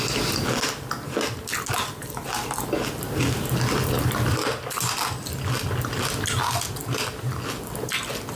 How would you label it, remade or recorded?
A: recorded